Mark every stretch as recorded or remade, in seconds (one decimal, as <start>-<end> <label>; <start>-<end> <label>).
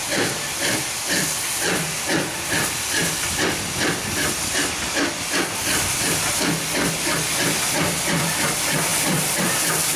0.0-8.9 recorded; 8.9-9.6 remade; 9.6-10.0 recorded